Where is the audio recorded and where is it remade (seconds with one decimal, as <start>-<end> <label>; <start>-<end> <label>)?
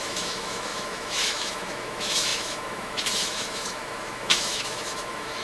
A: 0.0-5.4 remade